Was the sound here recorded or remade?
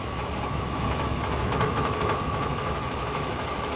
remade